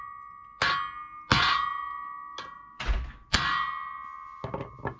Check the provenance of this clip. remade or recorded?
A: recorded